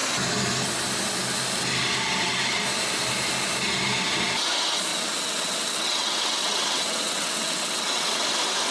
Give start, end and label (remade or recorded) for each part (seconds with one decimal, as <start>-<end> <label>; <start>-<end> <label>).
0.0-4.9 recorded; 4.9-8.2 remade; 8.2-8.7 recorded